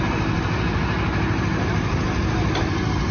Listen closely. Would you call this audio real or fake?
real